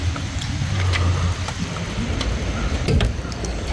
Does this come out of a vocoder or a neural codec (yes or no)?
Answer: no